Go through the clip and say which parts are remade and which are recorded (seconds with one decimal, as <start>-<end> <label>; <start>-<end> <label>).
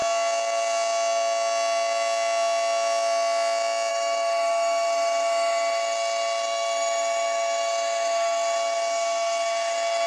0.0-3.9 recorded; 3.9-10.1 remade